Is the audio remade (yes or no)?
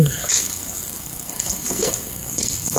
yes